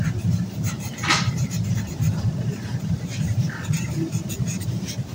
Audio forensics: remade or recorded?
remade